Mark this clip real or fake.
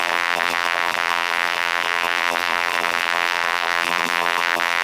fake